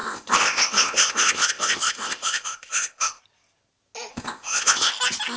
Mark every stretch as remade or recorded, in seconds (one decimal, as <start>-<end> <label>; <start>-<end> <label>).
0.0-3.2 remade; 3.2-4.1 recorded; 4.1-4.9 remade; 4.9-5.4 recorded